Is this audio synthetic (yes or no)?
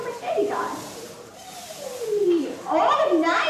yes